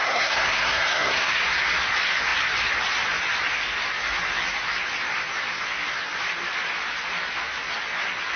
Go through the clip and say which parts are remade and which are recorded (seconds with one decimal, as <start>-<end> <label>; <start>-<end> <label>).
0.0-1.4 remade; 1.4-8.4 recorded